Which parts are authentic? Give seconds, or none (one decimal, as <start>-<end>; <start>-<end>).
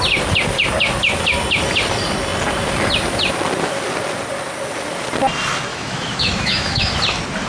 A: 0.0-5.7; 6.9-7.5